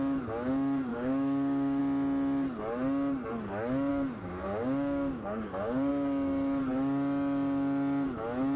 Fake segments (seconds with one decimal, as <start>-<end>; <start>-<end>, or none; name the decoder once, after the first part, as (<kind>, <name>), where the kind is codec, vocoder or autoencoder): 0.9-1.8 (codec, DAC); 3.9-5.9